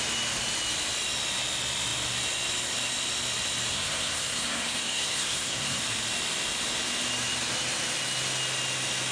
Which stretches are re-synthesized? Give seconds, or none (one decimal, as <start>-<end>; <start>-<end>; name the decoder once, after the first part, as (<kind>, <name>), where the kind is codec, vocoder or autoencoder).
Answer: 3.7-5.8 (codec, SNAC)